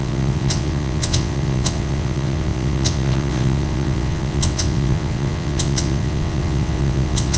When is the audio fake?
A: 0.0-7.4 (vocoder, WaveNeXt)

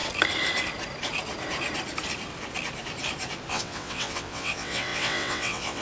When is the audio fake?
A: 3.5-5.8 (vocoder, WaveNeXt)